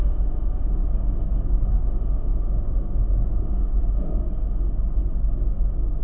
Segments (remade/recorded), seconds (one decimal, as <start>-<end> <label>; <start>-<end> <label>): 0.0-0.8 remade; 0.8-1.8 recorded; 1.8-4.2 remade; 4.2-6.0 recorded